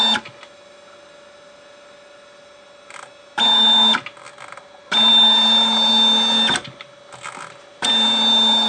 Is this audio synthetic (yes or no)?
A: no